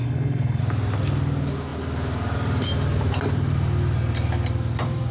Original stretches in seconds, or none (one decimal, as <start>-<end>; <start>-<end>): 0.6-5.1